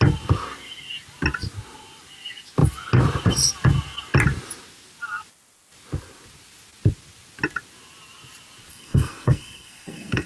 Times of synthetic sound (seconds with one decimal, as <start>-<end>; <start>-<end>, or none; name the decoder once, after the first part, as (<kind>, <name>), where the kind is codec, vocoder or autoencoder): 8.7-10.3 (codec, SNAC)